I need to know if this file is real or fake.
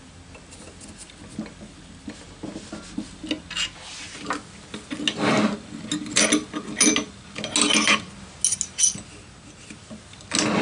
real